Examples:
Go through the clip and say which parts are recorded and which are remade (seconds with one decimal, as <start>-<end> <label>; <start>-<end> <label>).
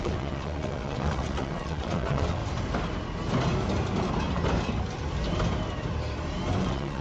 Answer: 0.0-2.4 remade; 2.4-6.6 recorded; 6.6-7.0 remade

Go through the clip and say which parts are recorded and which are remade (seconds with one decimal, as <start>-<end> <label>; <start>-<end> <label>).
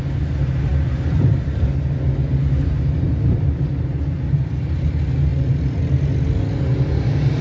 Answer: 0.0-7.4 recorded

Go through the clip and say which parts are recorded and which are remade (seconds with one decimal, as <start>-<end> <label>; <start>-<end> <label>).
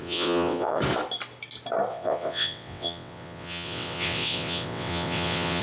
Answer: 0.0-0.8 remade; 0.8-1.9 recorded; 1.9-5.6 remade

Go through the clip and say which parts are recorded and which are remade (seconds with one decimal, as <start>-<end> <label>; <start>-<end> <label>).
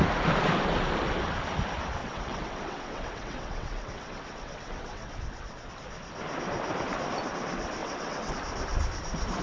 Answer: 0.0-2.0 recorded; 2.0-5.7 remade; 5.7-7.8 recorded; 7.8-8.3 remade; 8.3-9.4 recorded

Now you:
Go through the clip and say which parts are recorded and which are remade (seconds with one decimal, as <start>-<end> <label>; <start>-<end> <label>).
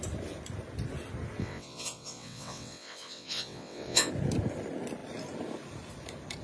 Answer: 0.0-1.4 recorded; 1.4-4.1 remade; 4.1-6.4 recorded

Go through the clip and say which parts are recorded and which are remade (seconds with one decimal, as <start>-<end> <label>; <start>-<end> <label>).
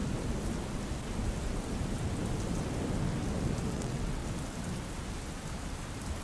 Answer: 0.0-3.7 recorded; 3.7-4.2 remade; 4.2-6.2 recorded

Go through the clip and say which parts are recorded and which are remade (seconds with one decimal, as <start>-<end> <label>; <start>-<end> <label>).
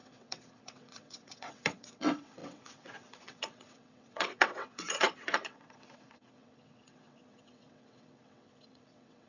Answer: 0.0-9.3 remade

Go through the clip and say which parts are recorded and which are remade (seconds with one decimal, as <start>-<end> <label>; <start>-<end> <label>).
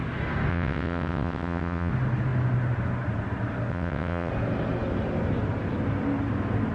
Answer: 0.0-0.5 recorded; 0.5-1.9 remade; 1.9-3.7 recorded; 3.7-4.3 remade; 4.3-6.7 recorded